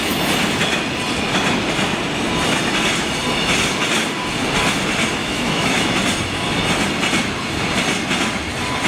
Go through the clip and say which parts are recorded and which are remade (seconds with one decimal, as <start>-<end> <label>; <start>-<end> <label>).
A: 0.0-5.2 recorded; 5.2-5.9 remade; 5.9-8.9 recorded

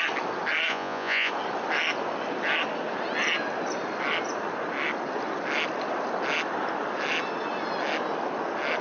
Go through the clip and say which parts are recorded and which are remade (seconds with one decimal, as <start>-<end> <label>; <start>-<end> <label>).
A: 0.0-0.7 recorded; 0.7-1.3 remade; 1.3-8.8 recorded

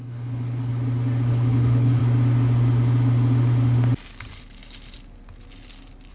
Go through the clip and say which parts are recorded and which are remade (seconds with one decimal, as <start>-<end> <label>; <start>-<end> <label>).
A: 0.0-0.7 remade; 0.7-1.3 recorded; 1.3-2.0 remade; 2.0-6.1 recorded

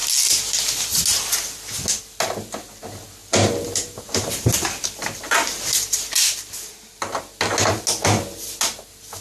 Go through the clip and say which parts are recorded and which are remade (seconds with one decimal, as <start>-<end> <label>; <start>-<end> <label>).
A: 0.0-3.2 recorded; 3.2-7.2 remade; 7.2-9.2 recorded

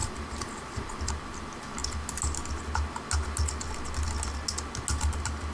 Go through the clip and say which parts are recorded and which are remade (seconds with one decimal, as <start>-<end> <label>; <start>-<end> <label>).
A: 0.0-1.1 remade; 1.1-5.5 recorded

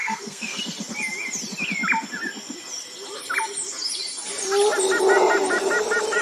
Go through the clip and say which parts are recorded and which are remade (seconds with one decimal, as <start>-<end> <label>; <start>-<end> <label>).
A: 0.0-0.6 remade; 0.6-6.2 recorded